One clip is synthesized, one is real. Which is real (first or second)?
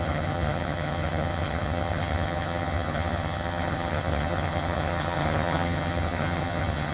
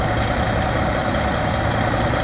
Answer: second